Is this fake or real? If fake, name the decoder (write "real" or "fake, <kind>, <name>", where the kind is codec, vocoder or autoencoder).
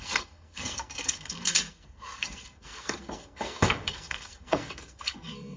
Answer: fake, codec, SNAC